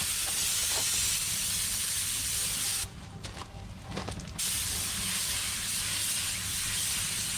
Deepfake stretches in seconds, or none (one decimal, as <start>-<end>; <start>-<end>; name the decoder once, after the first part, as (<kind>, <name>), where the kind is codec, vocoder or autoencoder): 0.0-0.6 (vocoder, BigVGAN v2); 1.4-7.4